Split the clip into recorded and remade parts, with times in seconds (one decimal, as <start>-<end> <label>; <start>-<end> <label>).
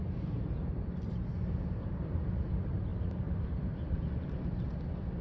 0.0-0.8 remade; 0.8-1.3 recorded; 1.3-1.9 remade; 1.9-2.9 recorded; 2.9-4.6 remade; 4.6-5.2 recorded